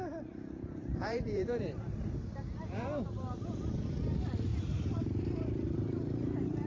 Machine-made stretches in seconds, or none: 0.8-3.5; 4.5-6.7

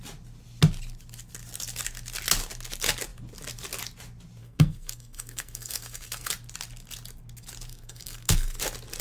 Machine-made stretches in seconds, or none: 4.4-6.3; 7.7-8.6

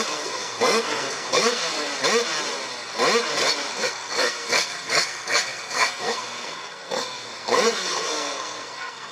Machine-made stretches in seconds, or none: 0.0-1.9; 3.7-9.1

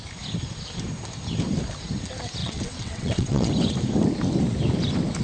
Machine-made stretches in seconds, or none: 2.4-3.5

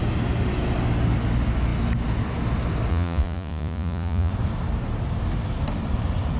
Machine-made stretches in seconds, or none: 2.9-4.3

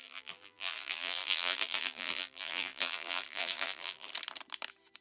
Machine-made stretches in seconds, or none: 0.0-4.1